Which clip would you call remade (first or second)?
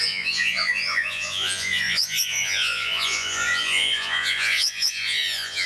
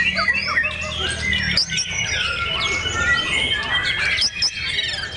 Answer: first